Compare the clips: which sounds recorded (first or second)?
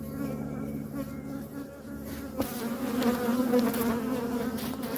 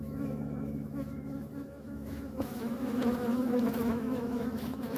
first